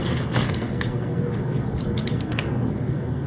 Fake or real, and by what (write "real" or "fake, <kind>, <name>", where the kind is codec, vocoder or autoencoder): fake, codec, SNAC